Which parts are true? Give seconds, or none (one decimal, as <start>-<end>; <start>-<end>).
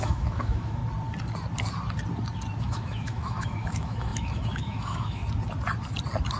0.8-2.6; 5.2-6.4